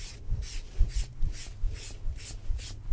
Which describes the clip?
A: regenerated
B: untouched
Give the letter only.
B